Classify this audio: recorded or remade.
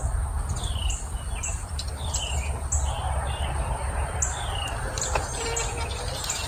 recorded